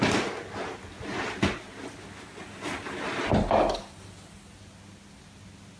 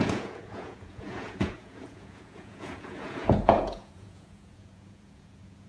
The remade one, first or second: second